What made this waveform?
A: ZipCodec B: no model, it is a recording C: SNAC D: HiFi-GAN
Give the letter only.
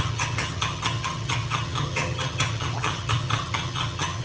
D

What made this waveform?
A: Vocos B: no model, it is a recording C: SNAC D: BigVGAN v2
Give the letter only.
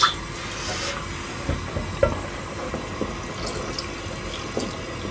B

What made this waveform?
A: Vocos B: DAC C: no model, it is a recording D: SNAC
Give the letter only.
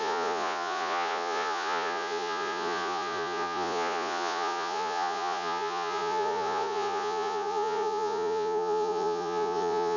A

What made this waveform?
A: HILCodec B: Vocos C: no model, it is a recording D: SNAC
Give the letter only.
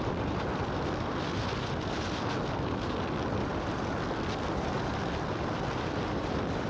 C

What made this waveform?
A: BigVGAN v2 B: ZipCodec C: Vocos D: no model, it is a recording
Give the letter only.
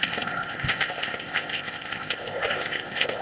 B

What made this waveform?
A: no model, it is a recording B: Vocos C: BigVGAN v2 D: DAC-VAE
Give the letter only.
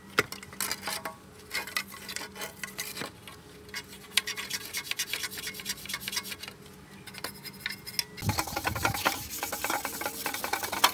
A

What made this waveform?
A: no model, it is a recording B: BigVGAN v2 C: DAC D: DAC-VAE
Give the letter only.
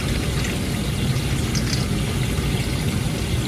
A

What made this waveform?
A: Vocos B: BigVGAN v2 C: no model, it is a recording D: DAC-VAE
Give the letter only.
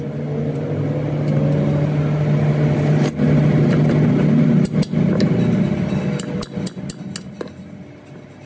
C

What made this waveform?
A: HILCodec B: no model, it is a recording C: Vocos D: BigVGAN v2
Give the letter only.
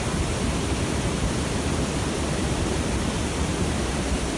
B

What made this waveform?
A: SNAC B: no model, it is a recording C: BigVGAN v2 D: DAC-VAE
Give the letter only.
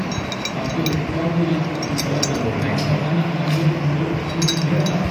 B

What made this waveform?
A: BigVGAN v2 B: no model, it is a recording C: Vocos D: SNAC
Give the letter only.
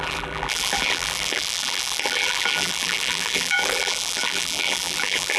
A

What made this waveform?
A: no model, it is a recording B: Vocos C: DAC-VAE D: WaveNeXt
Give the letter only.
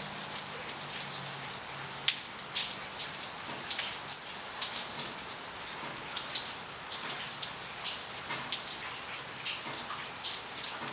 A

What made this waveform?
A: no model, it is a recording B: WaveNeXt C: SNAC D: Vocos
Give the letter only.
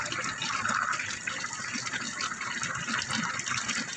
A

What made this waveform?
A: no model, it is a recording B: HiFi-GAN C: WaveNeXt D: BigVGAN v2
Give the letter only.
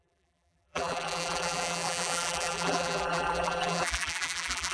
D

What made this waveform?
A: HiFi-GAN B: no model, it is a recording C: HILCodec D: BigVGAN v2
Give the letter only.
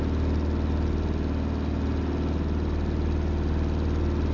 B